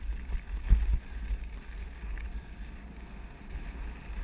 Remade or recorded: recorded